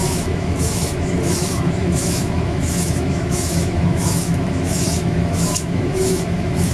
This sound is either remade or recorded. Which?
remade